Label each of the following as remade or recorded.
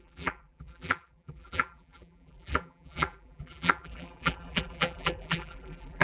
remade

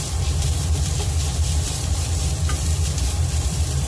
remade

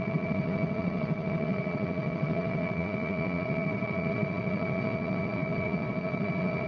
remade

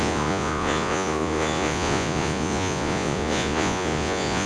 remade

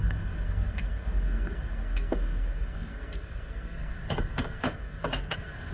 remade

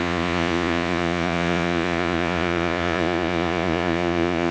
remade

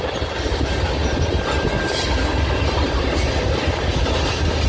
recorded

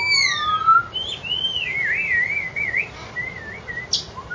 recorded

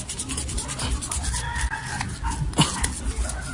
recorded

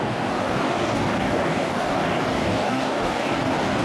remade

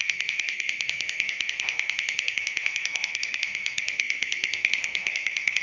remade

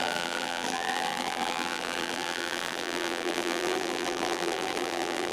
remade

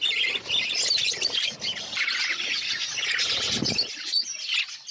recorded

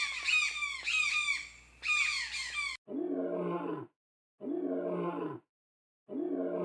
recorded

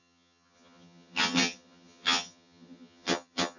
remade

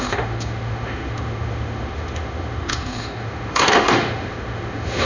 remade